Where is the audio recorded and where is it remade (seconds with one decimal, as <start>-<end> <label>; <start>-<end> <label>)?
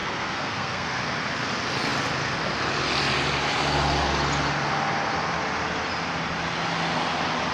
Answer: 0.0-1.0 remade; 1.0-7.5 recorded